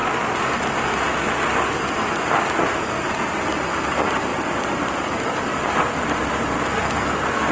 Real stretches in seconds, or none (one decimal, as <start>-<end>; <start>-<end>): 0.0-6.7